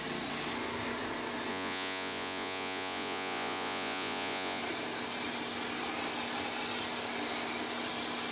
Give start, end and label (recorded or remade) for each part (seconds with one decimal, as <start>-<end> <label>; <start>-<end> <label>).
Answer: 0.0-1.5 recorded; 1.5-4.6 remade; 4.6-8.3 recorded